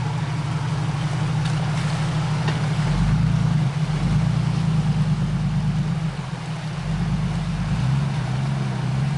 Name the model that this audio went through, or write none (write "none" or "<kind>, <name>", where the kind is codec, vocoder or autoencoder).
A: none